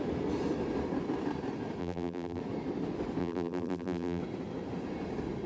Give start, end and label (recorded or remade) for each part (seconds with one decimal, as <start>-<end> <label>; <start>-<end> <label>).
0.0-1.8 recorded; 1.8-2.4 remade; 2.4-3.2 recorded; 3.2-4.2 remade; 4.2-5.5 recorded